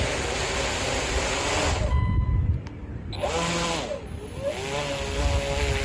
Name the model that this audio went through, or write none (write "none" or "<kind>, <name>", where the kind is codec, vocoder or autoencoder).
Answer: none